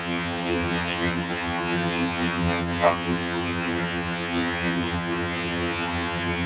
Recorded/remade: remade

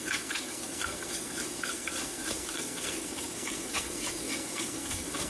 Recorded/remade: remade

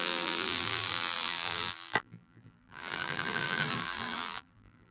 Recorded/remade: remade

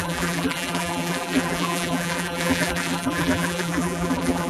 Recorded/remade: remade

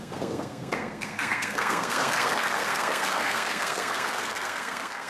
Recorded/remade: remade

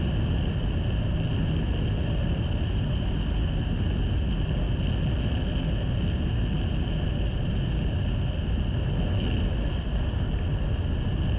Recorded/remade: recorded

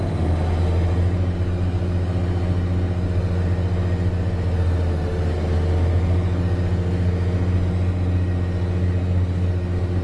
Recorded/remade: recorded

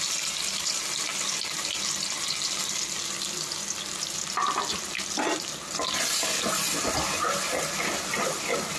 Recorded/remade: recorded